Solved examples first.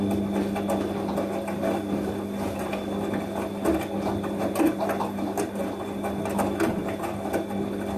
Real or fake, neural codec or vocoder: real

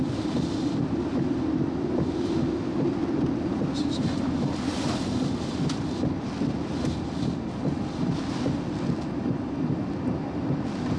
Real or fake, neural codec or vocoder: real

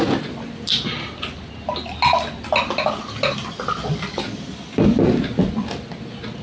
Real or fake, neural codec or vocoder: real